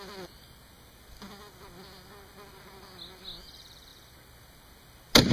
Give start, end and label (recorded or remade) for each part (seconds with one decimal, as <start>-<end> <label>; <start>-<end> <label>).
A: 0.0-5.3 recorded